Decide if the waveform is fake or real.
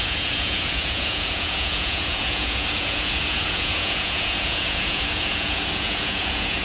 fake